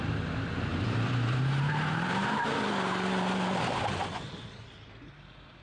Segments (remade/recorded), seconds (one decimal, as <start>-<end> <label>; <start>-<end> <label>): 0.0-0.7 recorded; 0.7-3.8 remade; 3.8-5.6 recorded

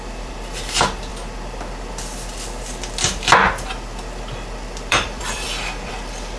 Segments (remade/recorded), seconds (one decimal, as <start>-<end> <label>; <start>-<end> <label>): 0.0-1.1 remade; 1.1-4.9 recorded; 4.9-6.4 remade

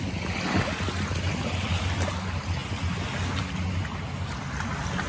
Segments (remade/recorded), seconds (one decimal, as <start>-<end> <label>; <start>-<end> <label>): 0.0-5.1 recorded

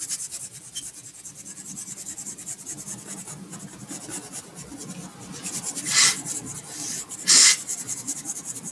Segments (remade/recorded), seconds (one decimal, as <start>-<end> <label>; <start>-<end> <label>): 0.0-8.7 recorded

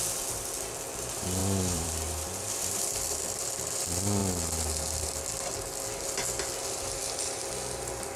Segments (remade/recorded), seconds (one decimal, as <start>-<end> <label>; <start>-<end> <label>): 0.0-1.4 recorded; 1.4-3.6 remade; 3.6-8.2 recorded